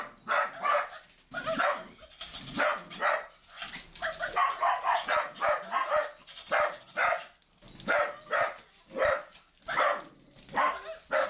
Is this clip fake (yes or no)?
no